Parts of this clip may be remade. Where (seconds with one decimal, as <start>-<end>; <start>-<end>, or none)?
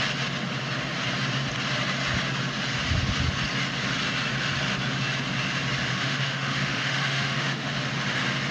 5.9-7.7